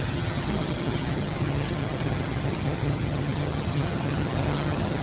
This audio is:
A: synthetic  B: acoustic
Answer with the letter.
A